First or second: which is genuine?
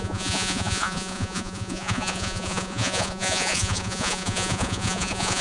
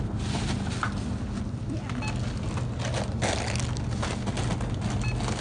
second